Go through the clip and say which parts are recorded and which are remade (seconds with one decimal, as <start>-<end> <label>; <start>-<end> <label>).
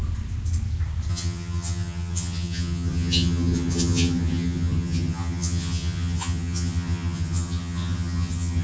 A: 0.0-1.1 recorded; 1.1-8.6 remade